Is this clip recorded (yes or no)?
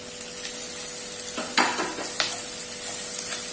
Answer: yes